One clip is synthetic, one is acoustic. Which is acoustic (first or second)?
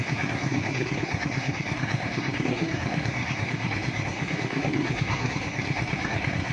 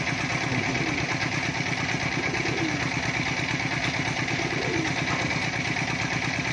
second